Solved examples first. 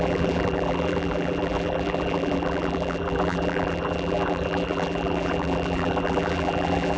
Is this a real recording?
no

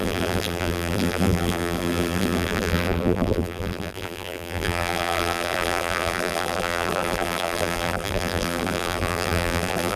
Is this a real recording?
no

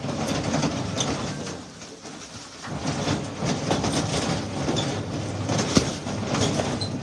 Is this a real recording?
yes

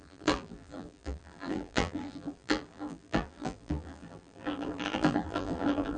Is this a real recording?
no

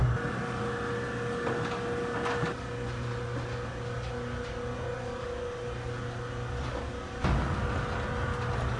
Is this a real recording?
yes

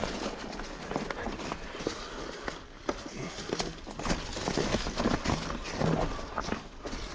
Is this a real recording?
yes